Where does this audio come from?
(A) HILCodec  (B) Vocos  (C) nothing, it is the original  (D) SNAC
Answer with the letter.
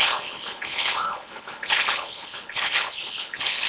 A